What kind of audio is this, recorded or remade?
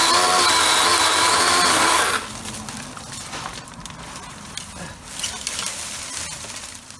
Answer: recorded